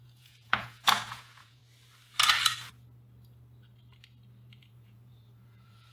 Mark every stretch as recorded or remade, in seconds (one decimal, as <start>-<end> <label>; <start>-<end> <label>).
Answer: 0.0-1.6 remade; 1.6-4.6 recorded; 4.6-5.9 remade